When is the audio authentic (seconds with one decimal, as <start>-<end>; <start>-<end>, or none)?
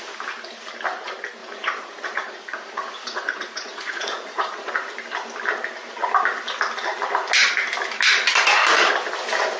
0.0-1.4; 4.7-9.6